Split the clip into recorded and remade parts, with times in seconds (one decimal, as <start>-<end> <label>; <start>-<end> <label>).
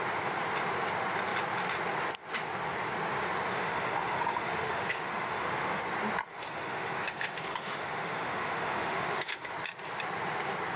0.0-3.5 recorded; 3.5-5.8 remade; 5.8-6.3 recorded; 6.3-9.5 remade; 9.5-10.8 recorded